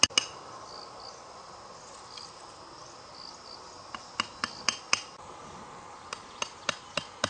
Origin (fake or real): real